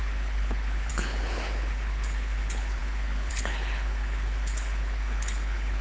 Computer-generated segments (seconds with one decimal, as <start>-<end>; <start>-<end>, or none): 0.0-5.8